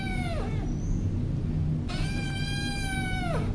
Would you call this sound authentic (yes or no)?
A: yes